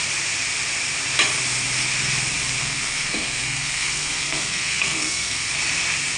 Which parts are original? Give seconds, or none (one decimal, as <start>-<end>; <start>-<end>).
0.0-2.6; 5.5-6.2